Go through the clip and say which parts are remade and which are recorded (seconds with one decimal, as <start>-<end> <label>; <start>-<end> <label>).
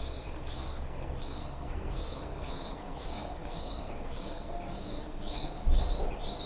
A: 0.0-5.6 remade; 5.6-6.5 recorded